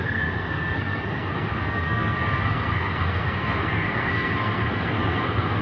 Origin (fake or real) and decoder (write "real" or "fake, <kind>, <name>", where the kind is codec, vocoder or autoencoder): fake, codec, SNAC